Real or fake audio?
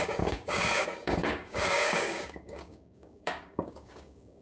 fake